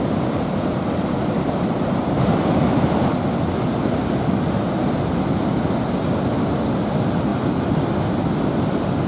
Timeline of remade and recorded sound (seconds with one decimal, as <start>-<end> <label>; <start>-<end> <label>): 0.0-9.1 recorded